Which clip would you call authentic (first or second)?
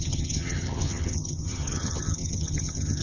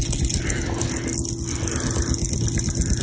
second